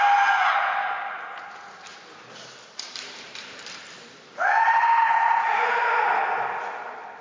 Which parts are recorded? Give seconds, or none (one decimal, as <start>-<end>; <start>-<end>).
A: 0.0-1.9; 6.2-7.2